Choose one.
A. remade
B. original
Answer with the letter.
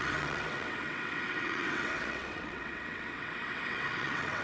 A